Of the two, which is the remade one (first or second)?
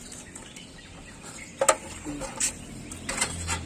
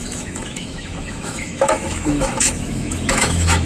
second